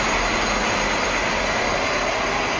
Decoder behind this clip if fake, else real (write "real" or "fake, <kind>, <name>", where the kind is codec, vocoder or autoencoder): real